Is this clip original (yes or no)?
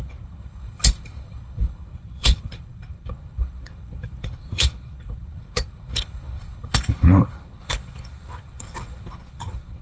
no